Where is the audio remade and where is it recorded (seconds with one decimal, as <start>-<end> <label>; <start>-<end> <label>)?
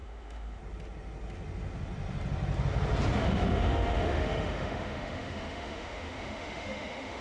0.0-0.6 remade; 0.6-3.2 recorded; 3.2-7.2 remade